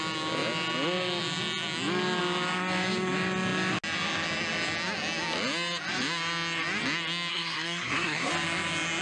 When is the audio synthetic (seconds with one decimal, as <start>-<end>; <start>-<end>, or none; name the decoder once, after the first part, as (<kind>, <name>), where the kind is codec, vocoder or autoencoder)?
7.3-8.3 (codec, SNAC)